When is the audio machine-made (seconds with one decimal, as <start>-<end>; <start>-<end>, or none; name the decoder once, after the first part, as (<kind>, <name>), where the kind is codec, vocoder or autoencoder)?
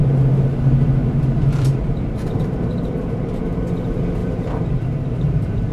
0.0-3.4 (vocoder, BigVGAN v2); 4.2-5.7